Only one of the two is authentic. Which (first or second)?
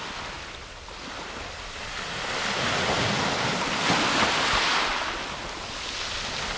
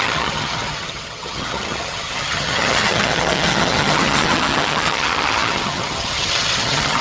first